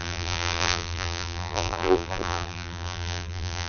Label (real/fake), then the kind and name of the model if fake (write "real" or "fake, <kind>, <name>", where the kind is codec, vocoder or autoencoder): fake, vocoder, BigVGAN v2